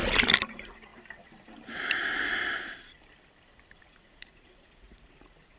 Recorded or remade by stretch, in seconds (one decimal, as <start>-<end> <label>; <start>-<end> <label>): 0.0-0.5 recorded; 0.5-0.9 remade; 0.9-3.8 recorded; 3.8-5.6 remade